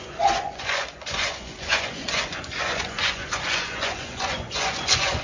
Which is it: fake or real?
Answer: fake